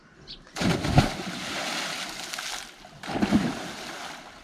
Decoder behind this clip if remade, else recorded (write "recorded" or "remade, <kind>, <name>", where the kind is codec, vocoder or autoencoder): recorded